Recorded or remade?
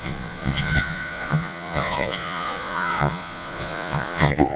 remade